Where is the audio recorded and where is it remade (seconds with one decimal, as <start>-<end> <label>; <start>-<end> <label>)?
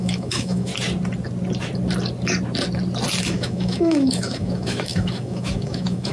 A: 0.0-0.7 remade; 0.7-3.2 recorded; 3.2-6.1 remade